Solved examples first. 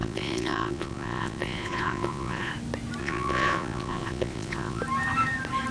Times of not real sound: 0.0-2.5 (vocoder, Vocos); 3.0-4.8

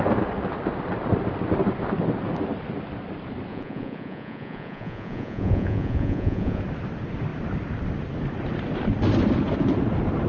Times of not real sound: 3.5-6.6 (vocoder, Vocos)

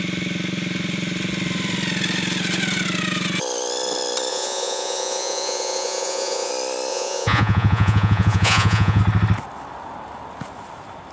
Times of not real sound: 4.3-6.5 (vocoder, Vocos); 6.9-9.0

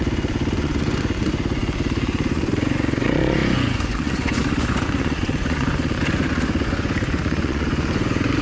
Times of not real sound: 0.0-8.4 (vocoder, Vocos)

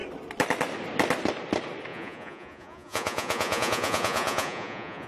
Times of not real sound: 1.9-5.1 (vocoder, Vocos)

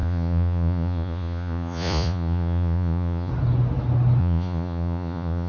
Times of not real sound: 0.0-3.3 (vocoder, Vocos); 4.2-5.5

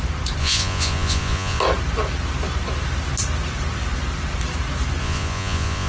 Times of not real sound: 0.4-1.6 (vocoder, Vocos); 5.0-5.9

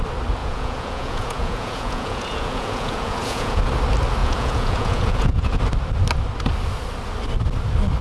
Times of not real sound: 0.4-3.6 (vocoder, Vocos); 4.2-5.6